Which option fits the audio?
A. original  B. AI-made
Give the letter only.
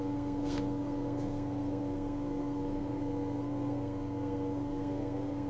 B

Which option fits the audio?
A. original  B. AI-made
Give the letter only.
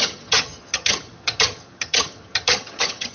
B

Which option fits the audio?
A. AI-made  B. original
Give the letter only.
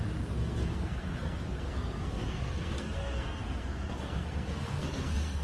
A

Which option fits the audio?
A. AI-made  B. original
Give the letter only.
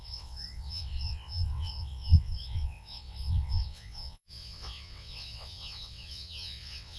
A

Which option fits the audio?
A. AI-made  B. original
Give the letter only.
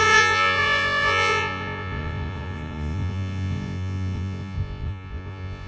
A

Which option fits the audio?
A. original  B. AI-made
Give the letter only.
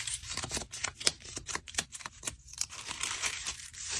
B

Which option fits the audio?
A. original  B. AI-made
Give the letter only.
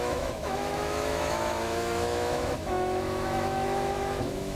B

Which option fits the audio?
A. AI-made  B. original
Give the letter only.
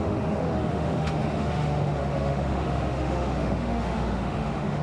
A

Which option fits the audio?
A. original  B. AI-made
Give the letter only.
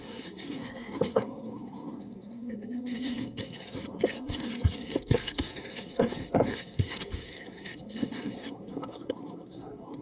B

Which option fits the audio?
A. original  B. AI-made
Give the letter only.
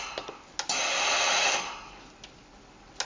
A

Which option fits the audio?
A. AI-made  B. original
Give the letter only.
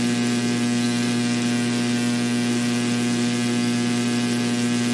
B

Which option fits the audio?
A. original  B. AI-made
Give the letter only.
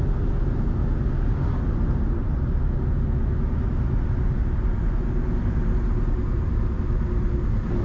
A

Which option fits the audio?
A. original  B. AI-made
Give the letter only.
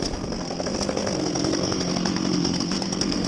B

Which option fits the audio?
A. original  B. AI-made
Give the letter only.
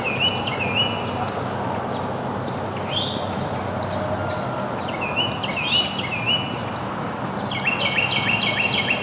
A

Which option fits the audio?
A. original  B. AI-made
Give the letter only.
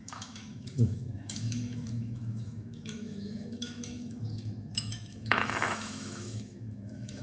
B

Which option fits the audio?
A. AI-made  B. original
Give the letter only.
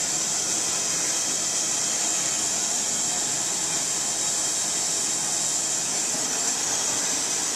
B